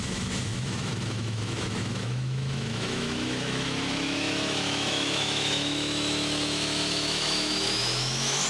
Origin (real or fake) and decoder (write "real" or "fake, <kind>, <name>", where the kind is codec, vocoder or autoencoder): fake, autoencoder, DAC-VAE